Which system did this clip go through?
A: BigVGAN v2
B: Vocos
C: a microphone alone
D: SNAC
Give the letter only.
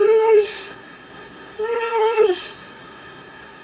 D